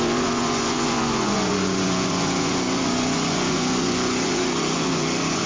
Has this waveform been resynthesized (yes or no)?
yes